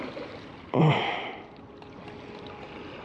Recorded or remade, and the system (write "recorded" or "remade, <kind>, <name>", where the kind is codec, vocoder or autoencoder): recorded